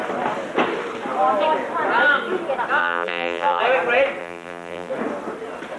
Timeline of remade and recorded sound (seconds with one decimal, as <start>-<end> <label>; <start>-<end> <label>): 0.0-2.8 recorded; 2.8-3.6 remade; 3.6-4.2 recorded; 4.2-4.9 remade; 4.9-5.8 recorded